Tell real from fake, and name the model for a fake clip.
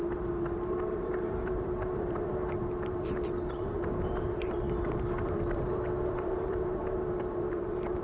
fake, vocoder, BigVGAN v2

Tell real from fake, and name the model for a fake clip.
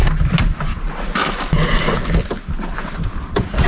real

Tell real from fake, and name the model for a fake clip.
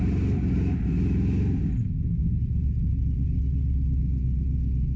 real